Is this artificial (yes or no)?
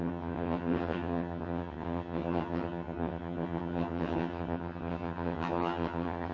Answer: yes